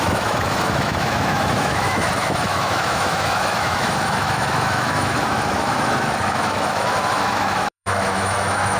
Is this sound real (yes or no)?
no